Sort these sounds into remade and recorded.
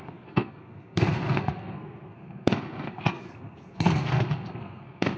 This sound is remade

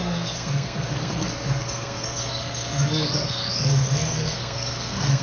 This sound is remade